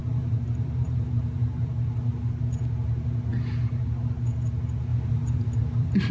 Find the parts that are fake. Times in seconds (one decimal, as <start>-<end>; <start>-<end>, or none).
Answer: 0.0-1.9; 4.9-6.1